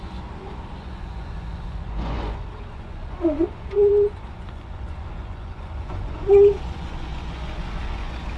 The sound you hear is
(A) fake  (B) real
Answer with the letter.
A